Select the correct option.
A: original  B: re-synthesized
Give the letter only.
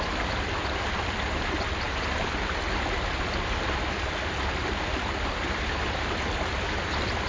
A